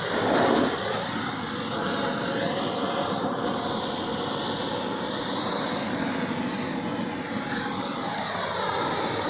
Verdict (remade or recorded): recorded